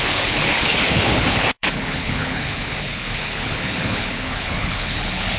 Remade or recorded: remade